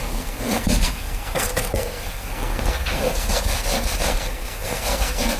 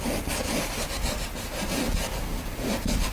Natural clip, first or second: second